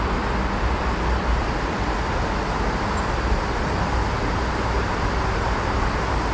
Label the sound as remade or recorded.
recorded